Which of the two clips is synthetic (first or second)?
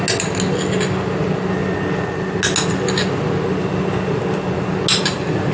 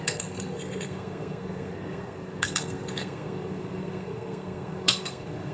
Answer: second